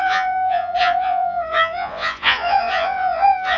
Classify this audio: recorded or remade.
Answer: remade